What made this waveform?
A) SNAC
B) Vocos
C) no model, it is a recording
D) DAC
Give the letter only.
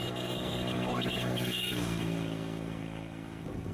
A